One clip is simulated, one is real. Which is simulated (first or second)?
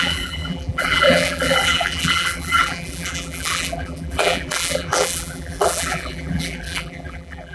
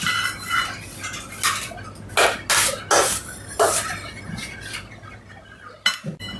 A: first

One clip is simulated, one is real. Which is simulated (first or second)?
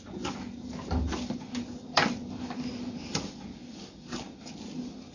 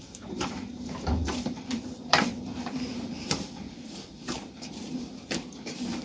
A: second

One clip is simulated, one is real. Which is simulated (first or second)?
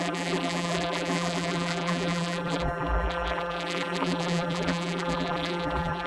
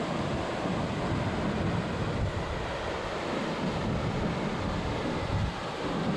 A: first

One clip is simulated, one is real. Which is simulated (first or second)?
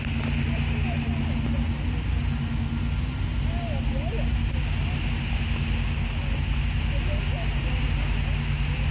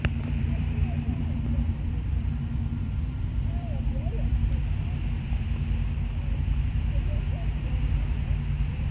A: second